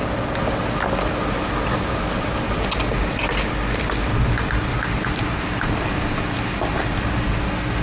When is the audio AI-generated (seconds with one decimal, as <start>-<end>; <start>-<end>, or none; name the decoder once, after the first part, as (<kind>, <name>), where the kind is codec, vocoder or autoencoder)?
none